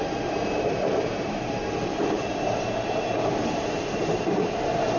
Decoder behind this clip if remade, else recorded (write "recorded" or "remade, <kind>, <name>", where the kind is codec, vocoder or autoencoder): remade, vocoder, BigVGAN v2